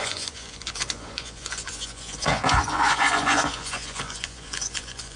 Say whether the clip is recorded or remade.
remade